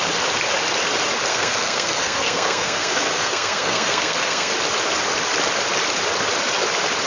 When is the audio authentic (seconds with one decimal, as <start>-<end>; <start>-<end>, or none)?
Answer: 0.0-1.3; 4.5-7.1